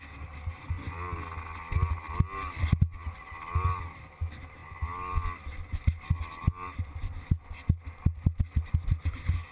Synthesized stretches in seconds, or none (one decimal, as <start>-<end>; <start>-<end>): none